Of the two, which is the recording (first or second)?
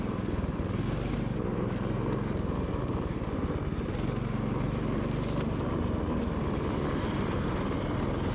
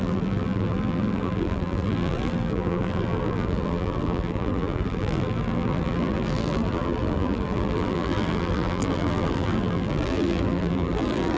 first